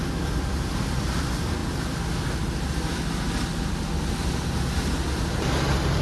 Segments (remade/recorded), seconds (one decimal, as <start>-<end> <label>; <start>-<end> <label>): 0.0-6.0 recorded